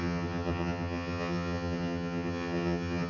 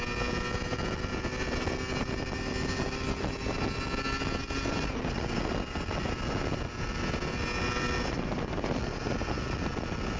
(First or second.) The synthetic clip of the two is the first